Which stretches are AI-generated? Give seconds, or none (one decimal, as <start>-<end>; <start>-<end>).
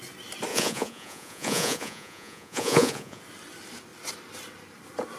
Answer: 0.5-3.2